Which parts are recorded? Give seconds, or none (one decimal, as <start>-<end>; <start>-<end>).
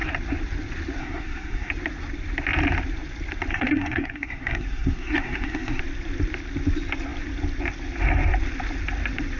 0.0-1.0; 1.7-3.5; 5.8-9.4